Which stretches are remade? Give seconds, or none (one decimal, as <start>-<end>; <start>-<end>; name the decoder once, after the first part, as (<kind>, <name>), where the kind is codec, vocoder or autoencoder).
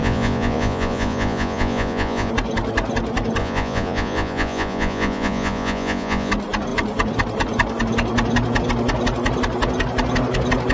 0.0-2.3 (vocoder, Vocos); 3.4-6.3